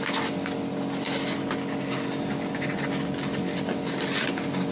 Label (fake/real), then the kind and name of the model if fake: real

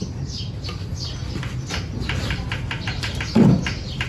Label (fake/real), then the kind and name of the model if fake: real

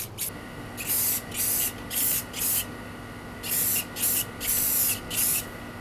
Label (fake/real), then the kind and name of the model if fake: real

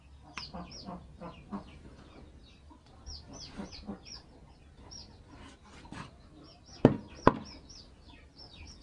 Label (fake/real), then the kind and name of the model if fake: real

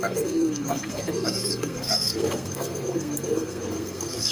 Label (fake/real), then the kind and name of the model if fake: fake, codec, SNAC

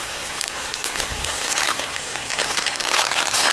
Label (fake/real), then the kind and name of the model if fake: fake, codec, SNAC